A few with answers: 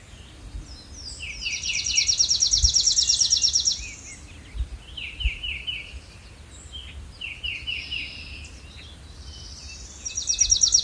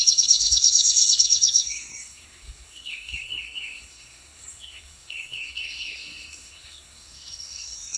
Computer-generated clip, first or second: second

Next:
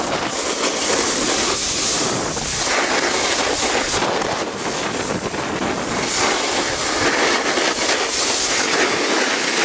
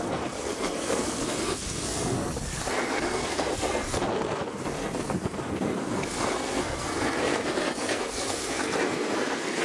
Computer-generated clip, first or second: second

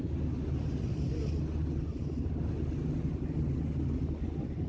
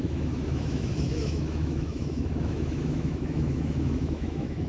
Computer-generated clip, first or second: second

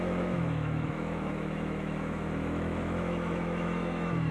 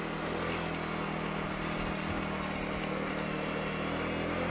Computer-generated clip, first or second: first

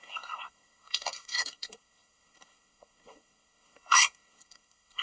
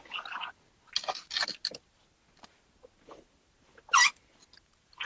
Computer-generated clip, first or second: first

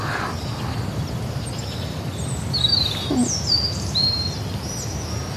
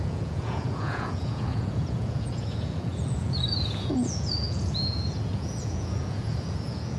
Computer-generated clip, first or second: second